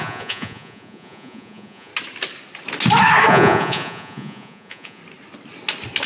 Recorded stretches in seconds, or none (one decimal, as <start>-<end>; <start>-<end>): 1.9-3.3; 5.0-6.1